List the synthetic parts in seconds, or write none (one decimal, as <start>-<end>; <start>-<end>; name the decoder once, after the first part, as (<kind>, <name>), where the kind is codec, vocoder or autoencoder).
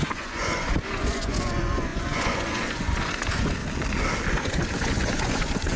0.0-3.6 (vocoder, Vocos); 4.3-5.8